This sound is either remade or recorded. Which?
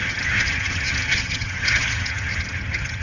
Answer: remade